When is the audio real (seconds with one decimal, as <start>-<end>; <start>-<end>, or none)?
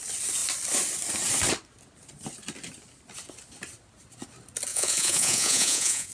0.0-4.7